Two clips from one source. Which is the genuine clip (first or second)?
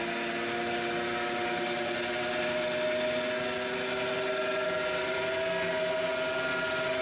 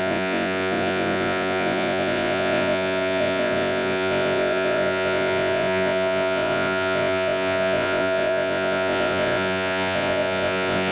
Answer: first